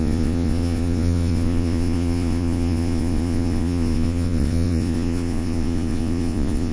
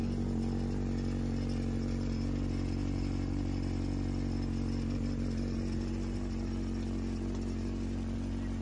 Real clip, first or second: second